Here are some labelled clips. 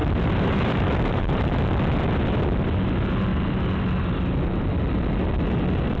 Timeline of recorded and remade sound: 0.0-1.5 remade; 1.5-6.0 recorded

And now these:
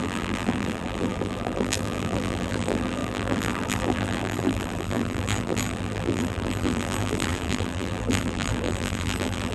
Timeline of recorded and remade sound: 0.0-9.5 remade

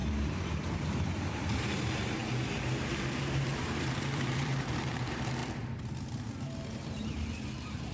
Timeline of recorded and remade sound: 0.0-2.2 remade; 2.2-3.1 recorded; 3.1-5.4 remade; 5.4-6.7 recorded; 6.7-7.9 remade

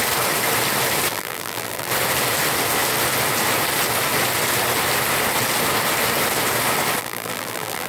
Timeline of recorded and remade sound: 0.0-1.1 recorded; 1.1-1.9 remade; 1.9-7.0 recorded; 7.0-7.9 remade

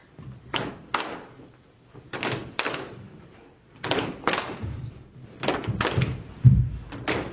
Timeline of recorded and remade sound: 0.0-2.4 recorded; 2.4-4.9 remade; 4.9-7.3 recorded

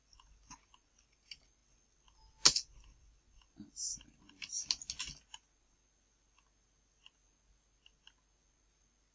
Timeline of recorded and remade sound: 0.0-9.1 recorded